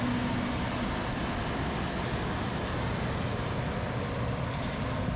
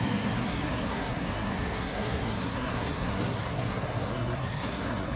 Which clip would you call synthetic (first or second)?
second